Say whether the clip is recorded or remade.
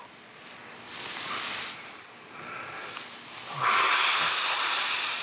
recorded